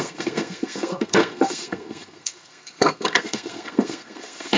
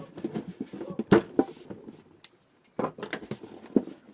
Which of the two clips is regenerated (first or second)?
first